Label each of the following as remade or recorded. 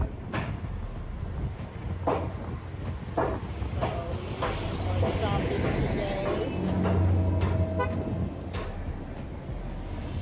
recorded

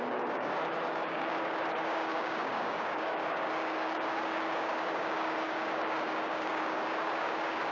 remade